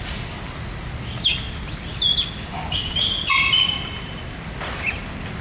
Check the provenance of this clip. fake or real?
real